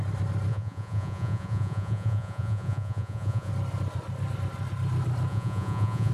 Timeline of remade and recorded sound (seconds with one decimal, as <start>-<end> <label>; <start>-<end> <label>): 0.0-0.5 recorded; 0.5-3.5 remade; 3.5-5.3 recorded; 5.3-6.1 remade